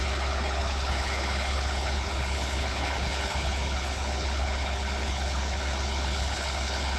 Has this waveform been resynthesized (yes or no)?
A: yes